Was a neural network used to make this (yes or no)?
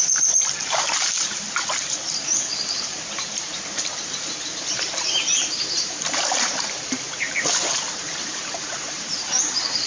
yes